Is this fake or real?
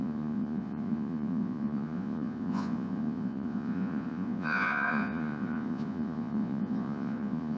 fake